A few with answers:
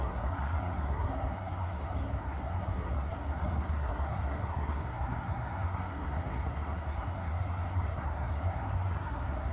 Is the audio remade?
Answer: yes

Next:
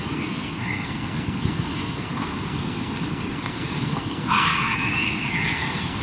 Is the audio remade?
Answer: yes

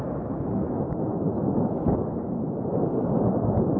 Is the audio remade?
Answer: no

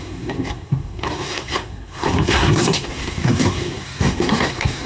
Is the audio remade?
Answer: yes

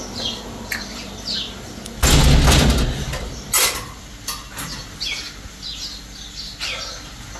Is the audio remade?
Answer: no